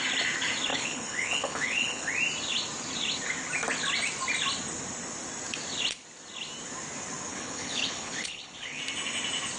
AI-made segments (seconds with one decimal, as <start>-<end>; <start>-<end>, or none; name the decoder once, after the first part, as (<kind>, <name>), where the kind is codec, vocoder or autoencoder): 0.7-2.1 (codec, HILCodec); 7.3-8.8